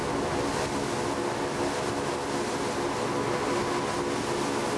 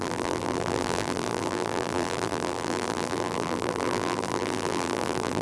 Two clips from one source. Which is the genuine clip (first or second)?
first